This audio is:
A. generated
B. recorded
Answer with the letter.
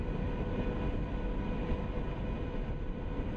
B